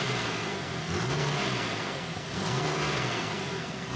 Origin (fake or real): fake